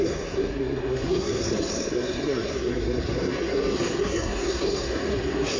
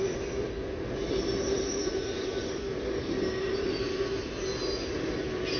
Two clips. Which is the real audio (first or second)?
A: second